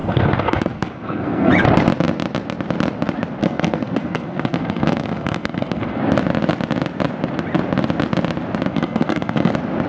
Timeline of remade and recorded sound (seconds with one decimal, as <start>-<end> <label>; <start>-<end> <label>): 0.0-1.5 remade; 1.5-3.4 recorded; 3.4-6.0 remade; 6.0-8.7 recorded; 8.7-9.5 remade; 9.5-9.9 recorded